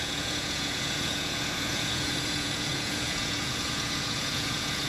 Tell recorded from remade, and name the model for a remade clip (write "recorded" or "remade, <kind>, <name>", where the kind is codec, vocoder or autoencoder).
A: remade, vocoder, Vocos